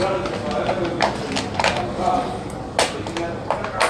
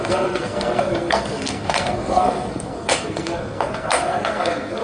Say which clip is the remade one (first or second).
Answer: second